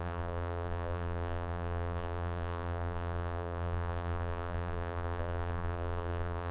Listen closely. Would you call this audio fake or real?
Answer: fake